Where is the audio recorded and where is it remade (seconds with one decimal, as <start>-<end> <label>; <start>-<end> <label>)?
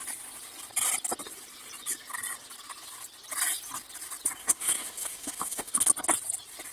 0.0-4.4 recorded; 4.4-5.9 remade; 5.9-6.7 recorded